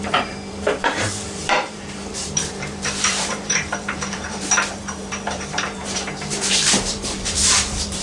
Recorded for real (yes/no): no